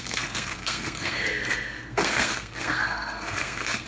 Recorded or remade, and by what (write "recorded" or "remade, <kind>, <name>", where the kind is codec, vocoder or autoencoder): remade, codec, SNAC